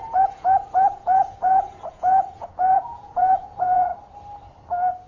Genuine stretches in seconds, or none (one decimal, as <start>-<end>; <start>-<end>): 3.9-5.1